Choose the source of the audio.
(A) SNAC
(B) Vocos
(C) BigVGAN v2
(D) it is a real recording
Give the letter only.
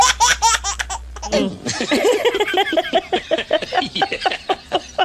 D